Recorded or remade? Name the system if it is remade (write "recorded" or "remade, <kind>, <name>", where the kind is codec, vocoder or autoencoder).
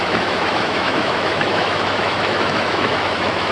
remade, autoencoder, DAC-VAE